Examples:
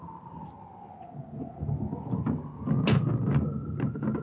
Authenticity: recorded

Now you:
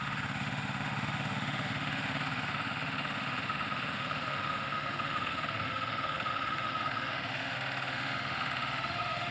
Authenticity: remade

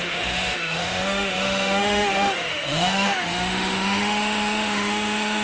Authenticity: remade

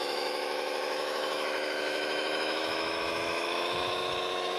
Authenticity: remade